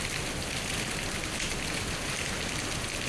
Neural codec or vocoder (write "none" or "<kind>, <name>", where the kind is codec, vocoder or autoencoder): none